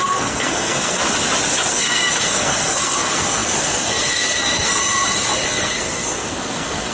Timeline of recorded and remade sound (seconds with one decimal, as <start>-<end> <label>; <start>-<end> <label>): 0.0-1.0 remade; 1.0-1.7 recorded; 1.7-4.8 remade; 4.8-5.4 recorded; 5.4-6.9 remade